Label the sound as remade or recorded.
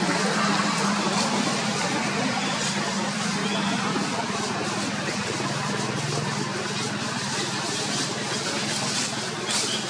recorded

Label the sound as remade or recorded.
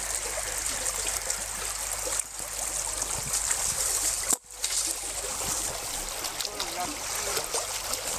recorded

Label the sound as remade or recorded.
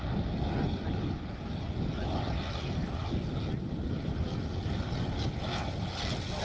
recorded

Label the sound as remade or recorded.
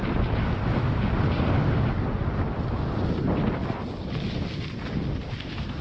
recorded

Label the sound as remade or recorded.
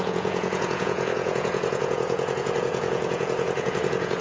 remade